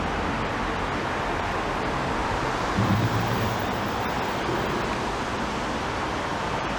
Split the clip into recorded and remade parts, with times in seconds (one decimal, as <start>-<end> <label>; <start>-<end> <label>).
0.0-2.2 recorded; 2.2-3.5 remade; 3.5-6.8 recorded